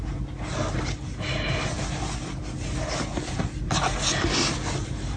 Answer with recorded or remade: recorded